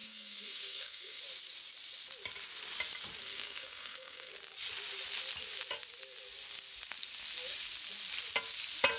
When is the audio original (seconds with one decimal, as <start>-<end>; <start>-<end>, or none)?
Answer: 1.2-3.2; 4.3-9.0